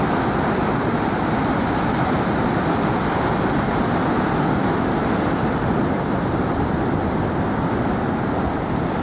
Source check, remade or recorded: recorded